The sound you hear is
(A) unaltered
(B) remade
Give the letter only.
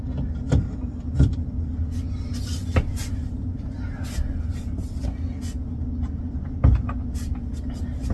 A